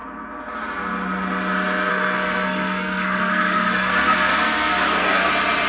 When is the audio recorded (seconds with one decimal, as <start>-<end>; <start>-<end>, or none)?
0.0-1.9; 5.3-5.7